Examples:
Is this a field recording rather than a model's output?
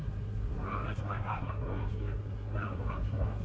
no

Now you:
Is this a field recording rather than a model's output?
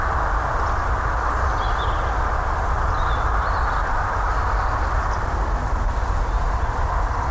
yes